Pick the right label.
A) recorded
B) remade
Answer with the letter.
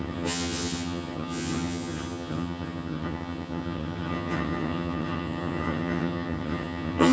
B